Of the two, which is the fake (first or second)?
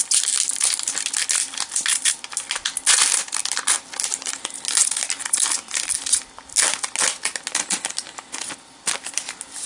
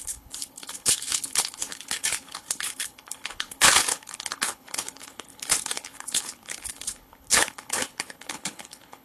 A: second